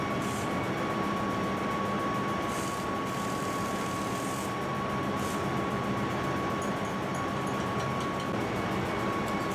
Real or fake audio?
real